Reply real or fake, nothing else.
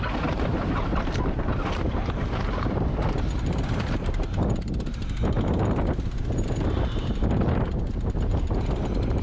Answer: fake